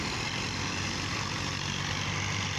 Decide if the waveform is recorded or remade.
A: recorded